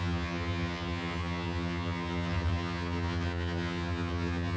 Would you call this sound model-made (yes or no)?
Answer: yes